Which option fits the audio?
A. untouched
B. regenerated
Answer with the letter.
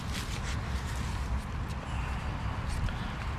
A